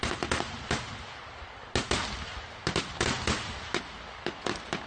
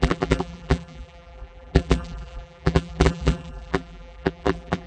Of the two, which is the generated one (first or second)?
second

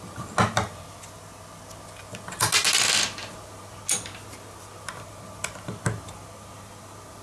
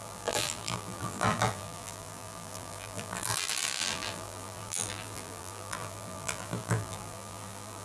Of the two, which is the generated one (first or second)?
second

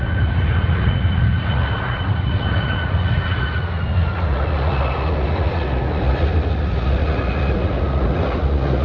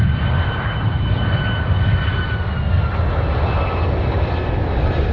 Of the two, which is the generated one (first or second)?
first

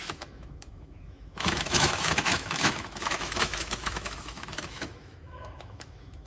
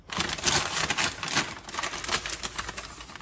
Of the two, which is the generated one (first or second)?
first